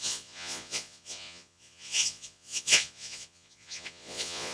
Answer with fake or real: fake